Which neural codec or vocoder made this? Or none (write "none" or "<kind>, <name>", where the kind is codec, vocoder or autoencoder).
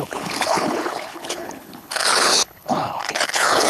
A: codec, HILCodec